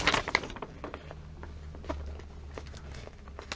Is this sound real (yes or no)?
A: yes